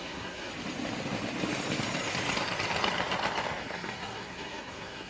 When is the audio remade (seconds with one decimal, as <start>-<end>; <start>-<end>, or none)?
0.0-0.5; 3.6-5.1